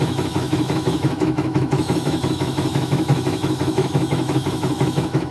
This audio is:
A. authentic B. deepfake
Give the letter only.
B